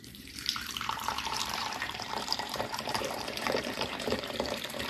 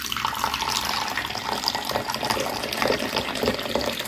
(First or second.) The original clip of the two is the second